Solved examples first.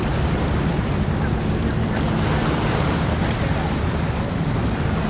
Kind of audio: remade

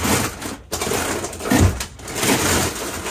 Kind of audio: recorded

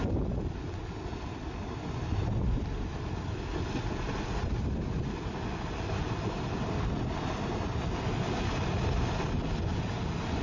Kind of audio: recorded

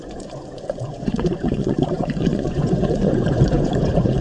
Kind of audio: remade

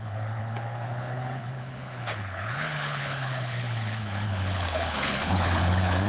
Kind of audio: remade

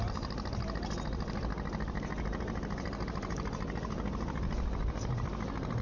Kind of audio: recorded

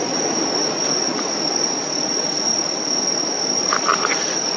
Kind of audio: recorded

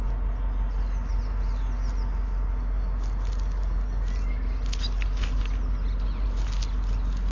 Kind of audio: recorded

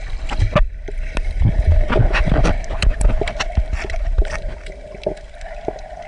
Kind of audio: recorded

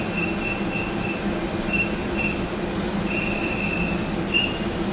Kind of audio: recorded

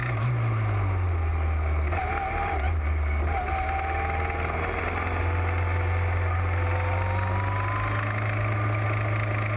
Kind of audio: recorded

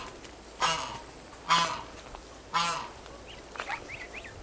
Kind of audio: recorded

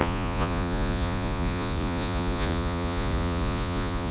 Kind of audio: remade